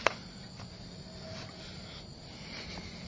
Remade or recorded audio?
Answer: recorded